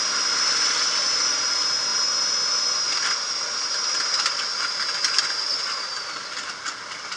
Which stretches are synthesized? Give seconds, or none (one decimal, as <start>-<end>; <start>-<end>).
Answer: none